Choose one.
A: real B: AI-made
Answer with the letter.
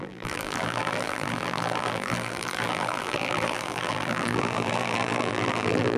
B